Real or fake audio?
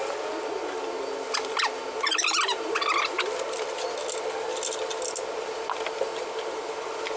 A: real